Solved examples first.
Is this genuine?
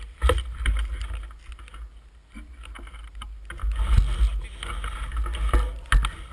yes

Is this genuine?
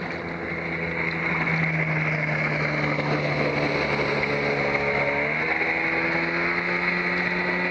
yes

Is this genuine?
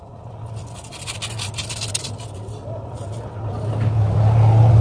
yes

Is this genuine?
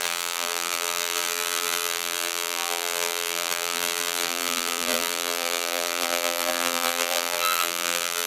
no